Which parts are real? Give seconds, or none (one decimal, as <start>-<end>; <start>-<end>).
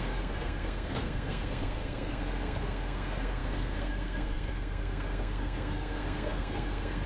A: none